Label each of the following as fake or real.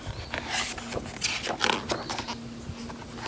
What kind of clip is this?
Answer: real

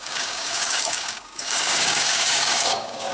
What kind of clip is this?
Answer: fake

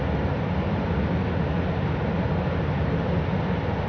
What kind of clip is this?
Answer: real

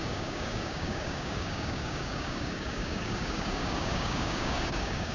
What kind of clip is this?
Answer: fake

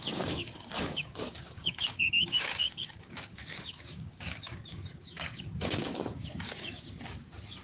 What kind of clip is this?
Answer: fake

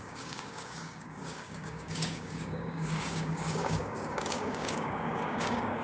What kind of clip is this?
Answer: fake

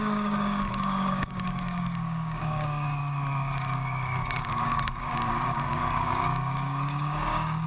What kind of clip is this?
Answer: fake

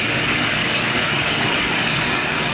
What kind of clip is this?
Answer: fake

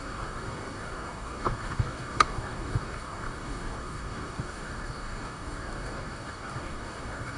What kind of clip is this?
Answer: fake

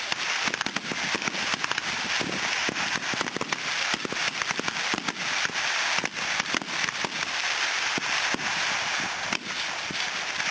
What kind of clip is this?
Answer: real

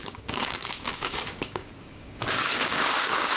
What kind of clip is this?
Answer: fake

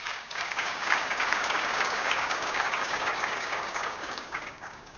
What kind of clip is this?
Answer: fake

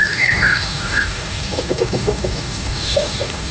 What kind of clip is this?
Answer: fake